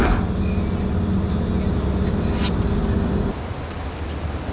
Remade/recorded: recorded